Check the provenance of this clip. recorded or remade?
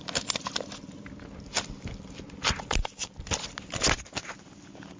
recorded